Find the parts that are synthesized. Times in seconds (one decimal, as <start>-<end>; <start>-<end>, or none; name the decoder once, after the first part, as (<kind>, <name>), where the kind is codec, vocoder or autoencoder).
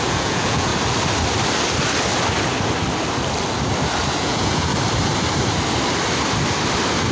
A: 0.0-0.7 (vocoder, Vocos); 4.2-4.7